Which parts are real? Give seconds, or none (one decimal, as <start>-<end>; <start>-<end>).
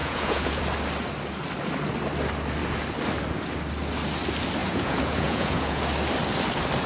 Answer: 0.6-4.6; 5.8-6.9